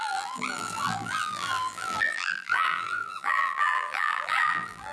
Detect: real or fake fake